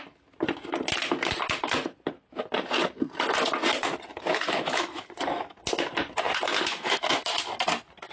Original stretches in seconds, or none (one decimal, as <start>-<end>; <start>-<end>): 0.0-4.1; 5.6-6.7; 7.4-8.1